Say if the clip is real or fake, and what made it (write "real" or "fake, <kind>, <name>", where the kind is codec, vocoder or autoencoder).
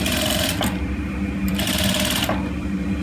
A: fake, vocoder, BigVGAN v2